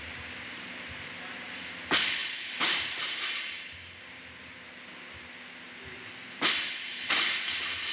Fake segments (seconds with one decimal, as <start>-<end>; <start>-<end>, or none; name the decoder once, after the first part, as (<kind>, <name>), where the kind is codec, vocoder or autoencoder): 2.2-3.7 (vocoder, BigVGAN v2)